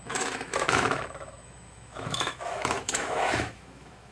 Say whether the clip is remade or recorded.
remade